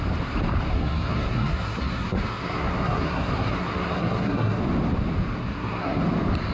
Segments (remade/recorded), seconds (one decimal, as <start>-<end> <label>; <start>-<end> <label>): 0.0-0.7 recorded; 0.7-4.6 remade; 4.6-5.4 recorded; 5.4-6.0 remade; 6.0-6.5 recorded